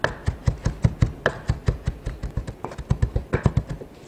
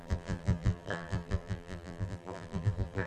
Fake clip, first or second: second